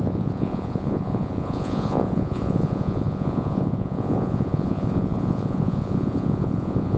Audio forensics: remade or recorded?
remade